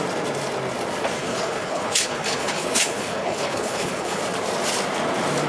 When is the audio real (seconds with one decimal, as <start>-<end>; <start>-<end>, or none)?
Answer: 0.0-1.2; 4.2-5.5